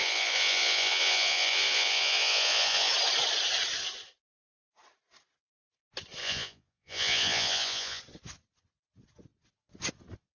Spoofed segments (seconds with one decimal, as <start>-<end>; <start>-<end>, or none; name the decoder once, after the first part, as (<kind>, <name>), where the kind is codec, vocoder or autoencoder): 0.0-2.9 (vocoder, Vocos); 6.2-8.0